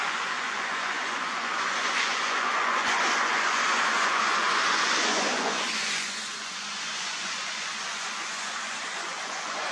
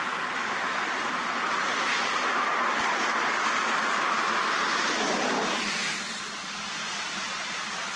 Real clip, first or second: second